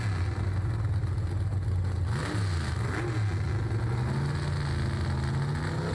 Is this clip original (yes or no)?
yes